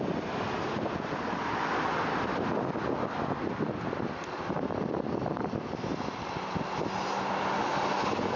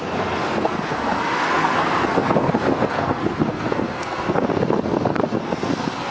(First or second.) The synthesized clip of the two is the second